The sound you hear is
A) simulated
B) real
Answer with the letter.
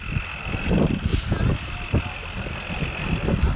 B